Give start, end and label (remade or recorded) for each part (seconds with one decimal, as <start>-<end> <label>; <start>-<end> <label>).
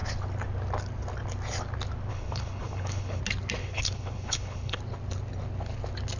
0.0-2.1 recorded; 2.1-3.2 remade; 3.2-3.6 recorded; 3.6-4.8 remade; 4.8-6.2 recorded